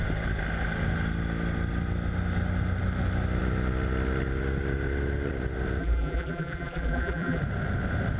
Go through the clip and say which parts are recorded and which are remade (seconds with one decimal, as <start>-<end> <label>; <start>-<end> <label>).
0.0-5.8 recorded; 5.8-7.4 remade; 7.4-8.2 recorded